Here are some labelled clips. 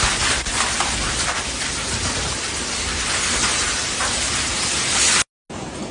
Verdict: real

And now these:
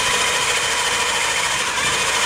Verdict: real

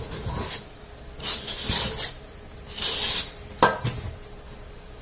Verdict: real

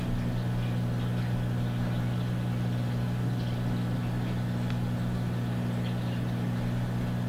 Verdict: real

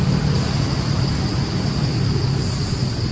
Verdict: real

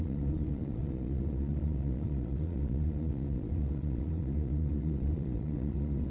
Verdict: fake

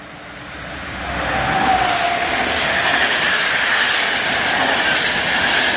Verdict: real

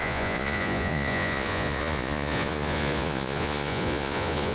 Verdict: fake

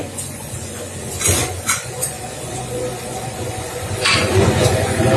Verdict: fake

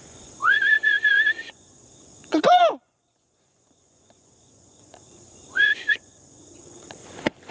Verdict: fake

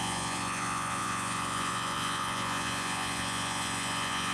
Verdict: fake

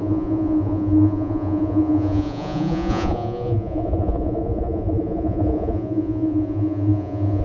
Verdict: fake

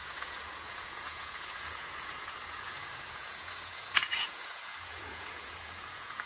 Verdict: fake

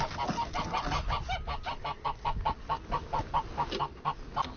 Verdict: real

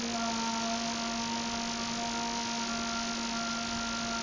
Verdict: real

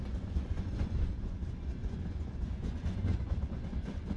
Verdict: fake